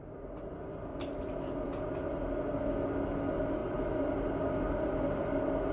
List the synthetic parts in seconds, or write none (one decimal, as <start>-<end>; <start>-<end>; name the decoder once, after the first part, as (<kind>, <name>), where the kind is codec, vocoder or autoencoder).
0.9-1.7 (vocoder, BigVGAN v2)

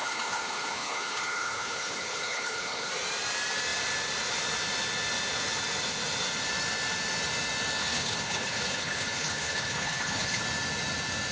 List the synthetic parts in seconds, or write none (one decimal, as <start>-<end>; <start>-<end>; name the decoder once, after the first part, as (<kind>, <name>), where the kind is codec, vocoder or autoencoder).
0.0-2.9 (codec, HILCodec); 7.8-10.4

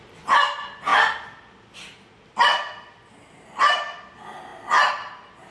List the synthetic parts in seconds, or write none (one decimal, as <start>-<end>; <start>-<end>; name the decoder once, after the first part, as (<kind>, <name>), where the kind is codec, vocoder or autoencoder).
none

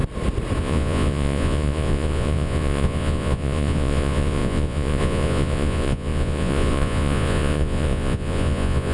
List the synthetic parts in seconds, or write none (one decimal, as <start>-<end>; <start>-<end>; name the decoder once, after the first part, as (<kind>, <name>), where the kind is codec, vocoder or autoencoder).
0.6-8.9 (vocoder, Vocos)

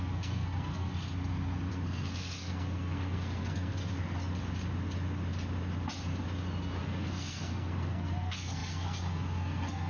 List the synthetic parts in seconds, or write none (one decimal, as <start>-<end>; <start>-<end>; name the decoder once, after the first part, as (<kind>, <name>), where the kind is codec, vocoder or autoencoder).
0.0-0.9 (codec, SNAC); 1.7-3.8; 6.8-9.9